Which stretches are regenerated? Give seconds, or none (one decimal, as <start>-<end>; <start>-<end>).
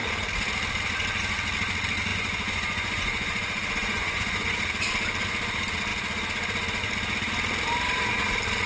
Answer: 2.1-4.6